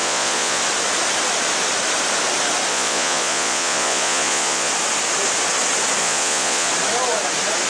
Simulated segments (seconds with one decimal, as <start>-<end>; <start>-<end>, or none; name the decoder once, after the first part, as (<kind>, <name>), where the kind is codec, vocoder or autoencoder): 0.0-0.6 (vocoder, Vocos); 2.7-4.7; 6.0-6.7